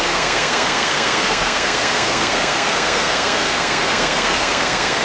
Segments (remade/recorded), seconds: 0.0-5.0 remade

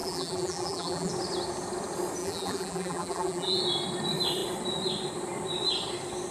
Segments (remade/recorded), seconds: 0.0-1.1 remade; 1.1-2.2 recorded; 2.2-3.6 remade; 3.6-6.3 recorded

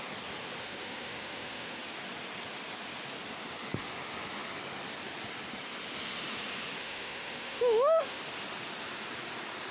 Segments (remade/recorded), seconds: 0.0-0.6 recorded; 0.6-1.8 remade; 1.8-6.8 recorded; 6.8-8.2 remade; 8.2-9.7 recorded

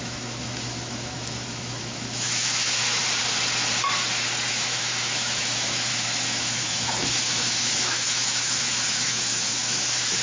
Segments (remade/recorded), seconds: 0.0-3.0 remade; 3.0-4.5 recorded; 4.5-10.2 remade

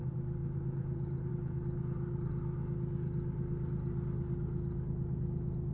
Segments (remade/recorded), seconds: 0.0-0.4 recorded; 0.4-1.3 remade; 1.3-5.7 recorded

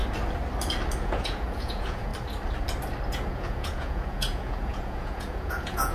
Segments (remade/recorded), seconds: 0.0-1.0 recorded; 1.0-2.1 remade; 2.1-3.1 recorded; 3.1-5.9 remade

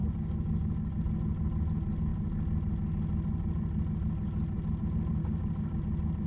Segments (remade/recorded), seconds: 0.0-1.0 remade; 1.0-5.2 recorded; 5.2-5.8 remade; 5.8-6.3 recorded

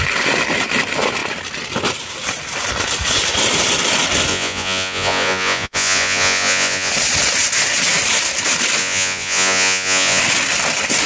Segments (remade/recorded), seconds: 0.0-4.3 recorded; 4.3-6.9 remade; 6.9-8.8 recorded; 8.8-10.2 remade; 10.2-11.1 recorded